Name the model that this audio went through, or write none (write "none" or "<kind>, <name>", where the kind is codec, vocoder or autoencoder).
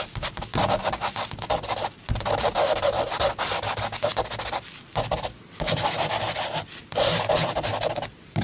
none